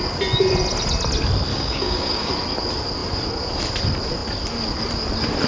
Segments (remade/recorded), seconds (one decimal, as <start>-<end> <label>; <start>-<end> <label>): 0.0-1.5 recorded; 1.5-2.3 remade; 2.3-5.5 recorded